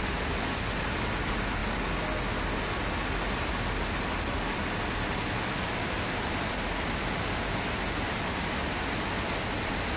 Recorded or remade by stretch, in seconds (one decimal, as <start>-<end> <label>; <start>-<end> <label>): 0.0-10.0 recorded